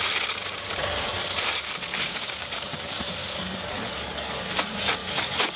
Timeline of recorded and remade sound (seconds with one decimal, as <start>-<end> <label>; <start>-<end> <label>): 0.0-1.9 recorded; 1.9-4.6 remade; 4.6-5.0 recorded; 5.0-5.6 remade